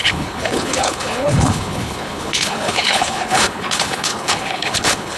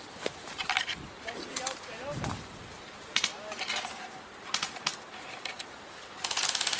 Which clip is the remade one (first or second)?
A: first